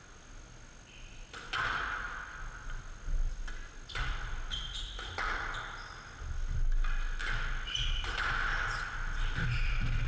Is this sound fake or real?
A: real